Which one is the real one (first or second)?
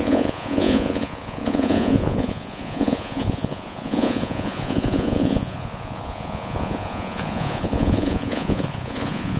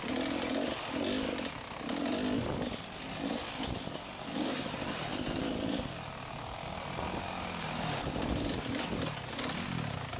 second